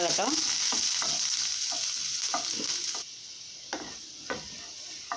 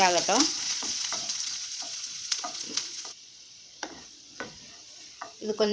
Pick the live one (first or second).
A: first